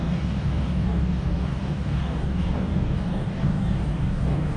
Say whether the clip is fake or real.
fake